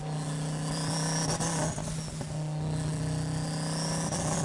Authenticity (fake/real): real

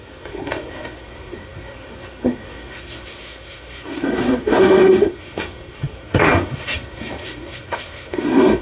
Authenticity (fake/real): fake